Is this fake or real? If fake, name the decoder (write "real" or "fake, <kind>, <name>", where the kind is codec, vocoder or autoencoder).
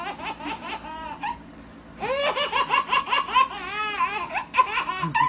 real